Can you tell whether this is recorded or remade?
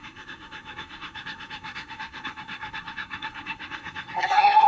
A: remade